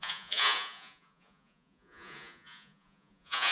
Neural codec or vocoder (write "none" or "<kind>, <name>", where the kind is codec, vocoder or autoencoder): vocoder, Vocos